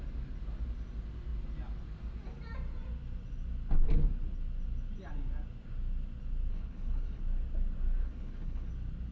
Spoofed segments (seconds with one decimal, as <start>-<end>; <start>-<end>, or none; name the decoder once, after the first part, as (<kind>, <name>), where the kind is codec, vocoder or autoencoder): 6.5-7.2 (codec, HILCodec); 8.0-8.7

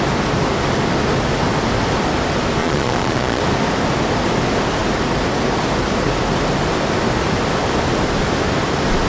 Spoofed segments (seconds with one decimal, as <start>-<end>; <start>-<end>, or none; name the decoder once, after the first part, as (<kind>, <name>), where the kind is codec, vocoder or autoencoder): 2.6-3.4 (vocoder, Vocos)

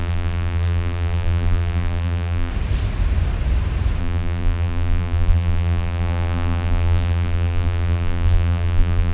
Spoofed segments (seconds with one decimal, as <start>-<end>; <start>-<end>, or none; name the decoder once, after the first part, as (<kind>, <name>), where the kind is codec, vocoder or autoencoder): 0.0-2.5 (vocoder, BigVGAN v2); 4.0-9.1

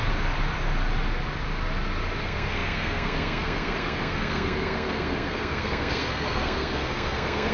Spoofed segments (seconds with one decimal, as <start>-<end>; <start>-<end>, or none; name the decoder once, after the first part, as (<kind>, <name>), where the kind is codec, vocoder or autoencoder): 2.2-7.5 (codec, SNAC)